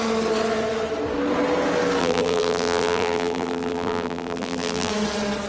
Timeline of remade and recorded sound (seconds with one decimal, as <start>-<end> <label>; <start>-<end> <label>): 0.0-2.0 recorded; 2.0-4.9 remade; 4.9-5.5 recorded